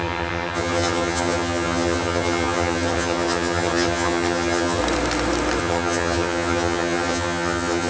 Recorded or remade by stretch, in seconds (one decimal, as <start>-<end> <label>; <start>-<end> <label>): 0.0-4.8 remade; 4.8-5.6 recorded; 5.6-7.9 remade